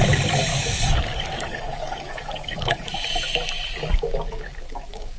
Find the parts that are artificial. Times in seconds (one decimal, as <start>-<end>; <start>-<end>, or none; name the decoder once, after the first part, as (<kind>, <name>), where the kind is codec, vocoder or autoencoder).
0.5-2.9 (codec, DAC); 3.9-5.2